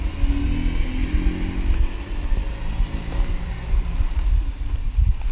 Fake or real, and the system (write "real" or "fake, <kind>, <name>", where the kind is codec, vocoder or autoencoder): real